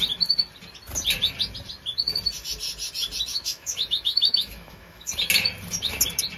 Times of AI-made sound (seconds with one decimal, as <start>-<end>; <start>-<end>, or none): 3.3-5.1